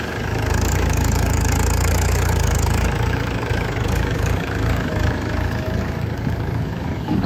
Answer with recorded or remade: remade